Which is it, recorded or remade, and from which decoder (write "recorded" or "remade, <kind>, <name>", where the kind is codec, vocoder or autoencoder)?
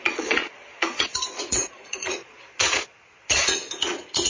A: remade, vocoder, Vocos